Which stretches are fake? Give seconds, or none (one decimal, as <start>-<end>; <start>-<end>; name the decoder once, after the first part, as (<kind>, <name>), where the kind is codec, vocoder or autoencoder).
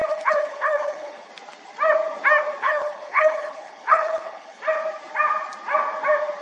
0.0-1.3 (codec, HILCodec); 2.6-4.6